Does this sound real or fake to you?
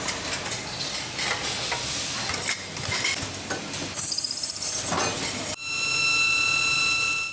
real